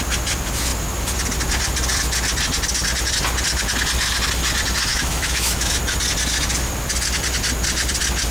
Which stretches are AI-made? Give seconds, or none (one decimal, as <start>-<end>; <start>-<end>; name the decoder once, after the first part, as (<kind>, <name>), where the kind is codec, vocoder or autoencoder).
4.9-5.8 (autoencoder, DAC-VAE)